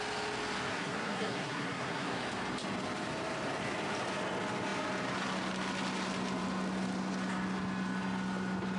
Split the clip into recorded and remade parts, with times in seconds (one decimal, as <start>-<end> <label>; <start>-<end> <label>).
0.0-0.7 recorded; 0.7-2.2 remade; 2.2-8.8 recorded